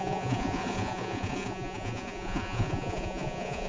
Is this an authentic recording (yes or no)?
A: no